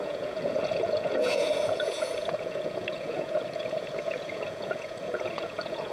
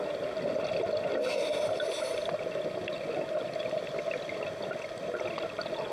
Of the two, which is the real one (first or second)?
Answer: second